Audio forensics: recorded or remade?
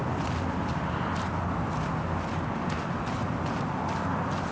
recorded